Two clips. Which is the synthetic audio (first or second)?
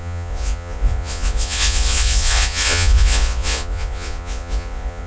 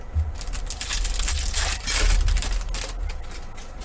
first